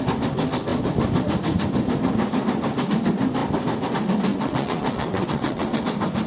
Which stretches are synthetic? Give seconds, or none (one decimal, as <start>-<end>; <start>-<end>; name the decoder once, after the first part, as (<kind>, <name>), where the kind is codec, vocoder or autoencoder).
4.3-5.8 (vocoder, WaveNeXt)

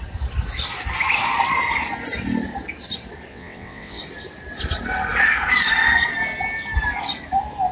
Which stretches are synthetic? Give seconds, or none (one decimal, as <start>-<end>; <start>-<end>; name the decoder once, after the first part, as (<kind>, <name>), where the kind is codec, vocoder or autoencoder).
3.3-4.0 (vocoder, WaveNeXt)

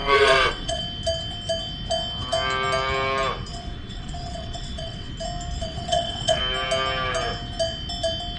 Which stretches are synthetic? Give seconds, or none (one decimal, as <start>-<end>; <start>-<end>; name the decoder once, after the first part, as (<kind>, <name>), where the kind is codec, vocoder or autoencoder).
0.0-0.8 (vocoder, WaveNeXt); 3.5-5.1; 5.6-6.4

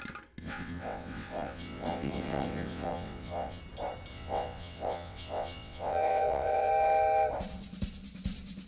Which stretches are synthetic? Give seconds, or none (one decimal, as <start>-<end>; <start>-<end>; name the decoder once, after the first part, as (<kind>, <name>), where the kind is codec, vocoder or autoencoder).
0.4-3.6 (vocoder, WaveNeXt); 4.1-6.7

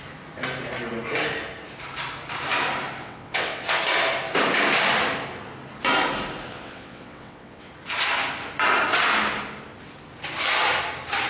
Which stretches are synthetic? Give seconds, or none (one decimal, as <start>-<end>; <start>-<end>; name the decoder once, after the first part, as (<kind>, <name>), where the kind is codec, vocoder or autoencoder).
3.0-3.8 (vocoder, WaveNeXt); 6.5-7.7

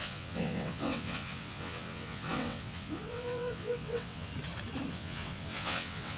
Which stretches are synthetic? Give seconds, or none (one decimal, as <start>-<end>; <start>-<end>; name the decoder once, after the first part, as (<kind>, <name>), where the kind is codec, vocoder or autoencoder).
0.0-4.3 (vocoder, WaveNeXt); 4.9-6.2

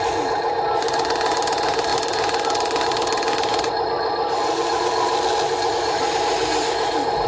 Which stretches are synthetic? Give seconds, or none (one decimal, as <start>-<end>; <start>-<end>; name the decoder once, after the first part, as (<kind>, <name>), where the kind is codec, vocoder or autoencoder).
none